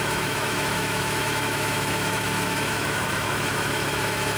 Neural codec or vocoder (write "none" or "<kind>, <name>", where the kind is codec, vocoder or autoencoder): autoencoder, DAC-VAE